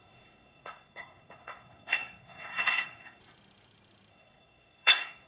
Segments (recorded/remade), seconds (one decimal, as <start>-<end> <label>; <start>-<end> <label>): 0.0-3.2 remade; 3.2-4.1 recorded; 4.1-5.3 remade